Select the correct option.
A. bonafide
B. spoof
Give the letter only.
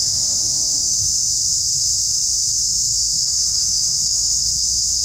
B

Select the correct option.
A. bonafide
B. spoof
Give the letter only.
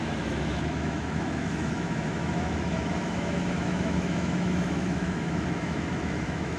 B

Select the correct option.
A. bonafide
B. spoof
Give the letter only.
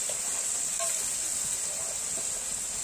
A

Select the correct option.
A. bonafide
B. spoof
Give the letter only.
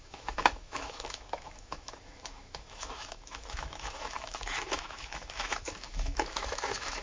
B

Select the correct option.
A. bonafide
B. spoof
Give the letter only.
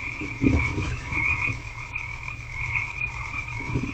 B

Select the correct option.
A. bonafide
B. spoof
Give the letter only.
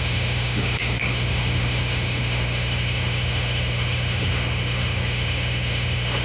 B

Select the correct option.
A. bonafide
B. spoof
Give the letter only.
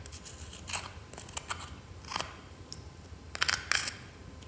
A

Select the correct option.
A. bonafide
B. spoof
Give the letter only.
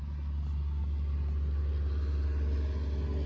A